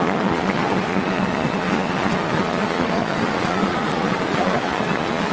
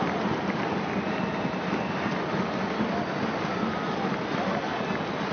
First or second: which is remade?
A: first